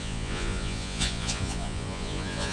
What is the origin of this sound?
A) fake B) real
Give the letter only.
A